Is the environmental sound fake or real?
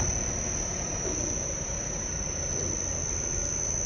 real